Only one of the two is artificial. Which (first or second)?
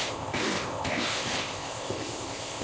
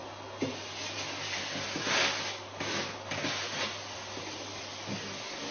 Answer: first